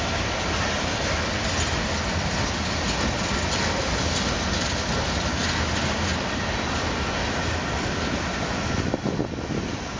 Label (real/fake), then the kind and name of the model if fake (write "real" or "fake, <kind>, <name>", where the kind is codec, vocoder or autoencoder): real